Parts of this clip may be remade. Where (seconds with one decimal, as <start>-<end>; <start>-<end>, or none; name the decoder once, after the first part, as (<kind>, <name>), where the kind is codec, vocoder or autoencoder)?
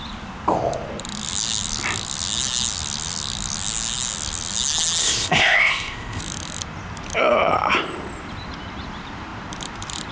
5.0-6.2 (codec, ZipCodec)